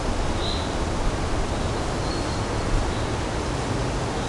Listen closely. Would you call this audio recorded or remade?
recorded